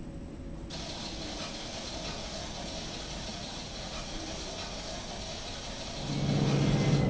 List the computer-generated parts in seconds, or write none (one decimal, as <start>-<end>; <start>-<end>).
3.3-4.2